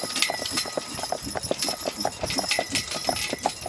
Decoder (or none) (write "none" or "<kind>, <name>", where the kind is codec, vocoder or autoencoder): none